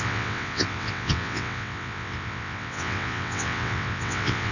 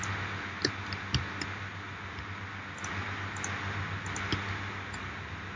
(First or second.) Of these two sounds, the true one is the second